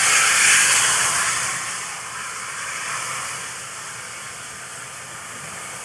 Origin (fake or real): real